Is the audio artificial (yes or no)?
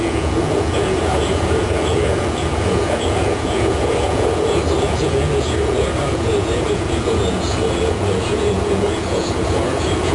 yes